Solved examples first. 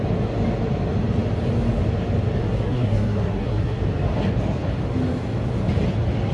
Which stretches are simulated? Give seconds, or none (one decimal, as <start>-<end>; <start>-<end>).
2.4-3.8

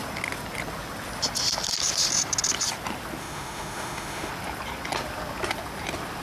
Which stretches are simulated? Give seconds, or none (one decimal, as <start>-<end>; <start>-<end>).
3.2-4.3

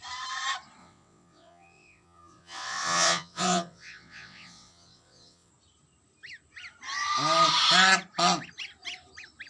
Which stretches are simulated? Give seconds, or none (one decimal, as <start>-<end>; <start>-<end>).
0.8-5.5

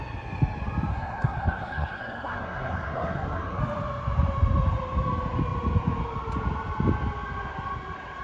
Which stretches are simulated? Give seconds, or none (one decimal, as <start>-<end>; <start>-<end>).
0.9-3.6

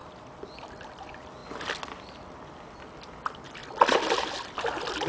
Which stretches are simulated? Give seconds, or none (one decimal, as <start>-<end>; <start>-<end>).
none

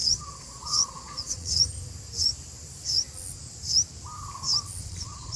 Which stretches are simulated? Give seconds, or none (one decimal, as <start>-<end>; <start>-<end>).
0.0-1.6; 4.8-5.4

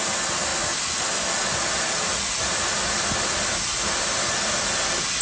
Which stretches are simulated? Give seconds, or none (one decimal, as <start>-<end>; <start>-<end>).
none

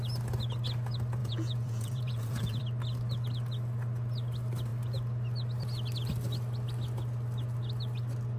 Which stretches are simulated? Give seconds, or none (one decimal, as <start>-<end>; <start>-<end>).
1.2-2.6